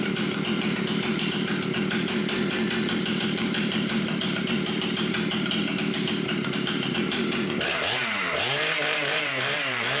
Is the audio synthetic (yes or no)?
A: yes